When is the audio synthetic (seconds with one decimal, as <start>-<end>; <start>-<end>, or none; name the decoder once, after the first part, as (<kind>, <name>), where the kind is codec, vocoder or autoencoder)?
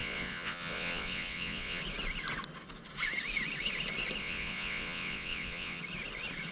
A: 0.0-1.8 (vocoder, WaveNeXt); 4.2-5.8